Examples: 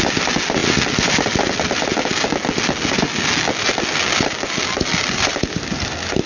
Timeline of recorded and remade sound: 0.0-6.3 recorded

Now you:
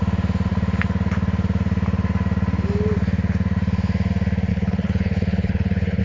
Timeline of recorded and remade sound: 0.0-4.5 recorded; 4.5-6.0 remade

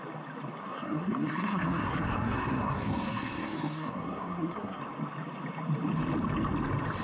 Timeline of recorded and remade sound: 0.0-0.6 recorded; 0.6-4.8 remade; 4.8-7.0 recorded

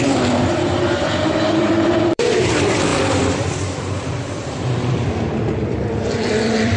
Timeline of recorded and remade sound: 0.0-6.8 remade

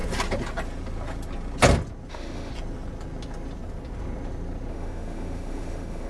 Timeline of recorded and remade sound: 0.0-2.1 recorded; 2.1-2.5 remade; 2.5-4.7 recorded; 4.7-6.1 remade